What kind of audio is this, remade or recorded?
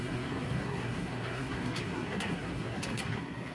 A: remade